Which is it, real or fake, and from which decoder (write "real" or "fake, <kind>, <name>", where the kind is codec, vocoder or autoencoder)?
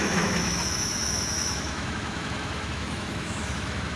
fake, autoencoder, DAC-VAE